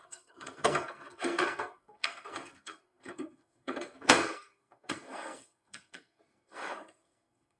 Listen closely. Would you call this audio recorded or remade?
remade